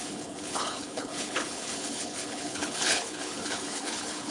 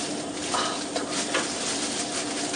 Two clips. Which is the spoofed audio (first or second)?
first